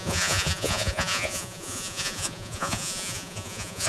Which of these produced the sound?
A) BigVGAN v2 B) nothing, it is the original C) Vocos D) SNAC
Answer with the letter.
C